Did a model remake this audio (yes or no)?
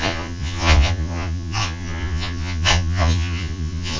yes